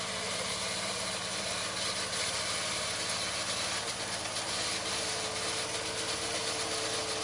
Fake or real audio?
real